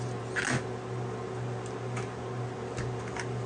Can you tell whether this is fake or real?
real